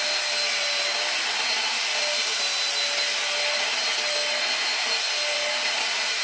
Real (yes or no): yes